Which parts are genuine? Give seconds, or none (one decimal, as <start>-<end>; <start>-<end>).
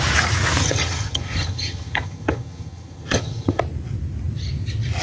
0.0-0.6; 3.6-5.0